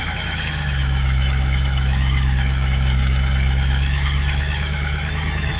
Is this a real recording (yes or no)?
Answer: no